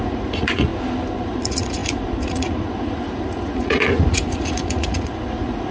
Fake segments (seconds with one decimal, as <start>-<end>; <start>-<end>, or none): 0.0-0.7; 1.2-5.7